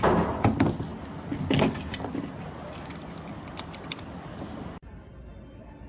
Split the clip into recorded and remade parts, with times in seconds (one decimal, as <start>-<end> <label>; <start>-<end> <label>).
0.0-5.9 recorded